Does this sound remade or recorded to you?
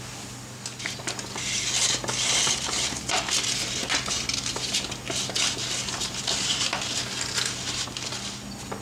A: recorded